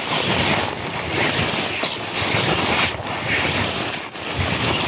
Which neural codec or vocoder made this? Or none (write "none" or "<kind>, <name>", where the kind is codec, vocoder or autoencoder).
none